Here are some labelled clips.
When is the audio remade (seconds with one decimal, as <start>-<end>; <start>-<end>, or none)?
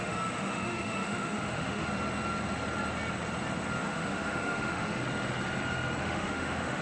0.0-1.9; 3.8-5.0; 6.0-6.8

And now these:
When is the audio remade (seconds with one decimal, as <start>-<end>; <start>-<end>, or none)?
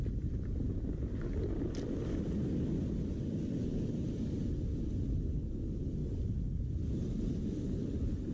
none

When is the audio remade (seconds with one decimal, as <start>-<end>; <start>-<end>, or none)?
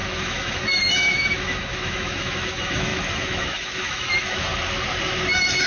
0.0-4.5; 5.2-5.7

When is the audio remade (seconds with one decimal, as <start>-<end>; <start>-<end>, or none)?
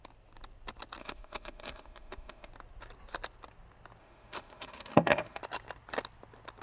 1.0-2.5; 4.0-5.4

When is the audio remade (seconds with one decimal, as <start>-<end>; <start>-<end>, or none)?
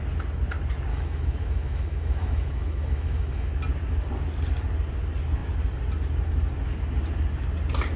0.9-3.5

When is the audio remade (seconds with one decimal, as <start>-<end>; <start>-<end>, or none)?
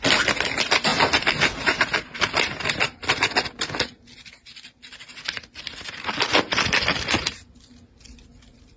none